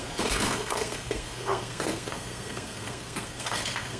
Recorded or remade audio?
remade